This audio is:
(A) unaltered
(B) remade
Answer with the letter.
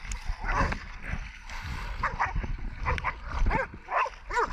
A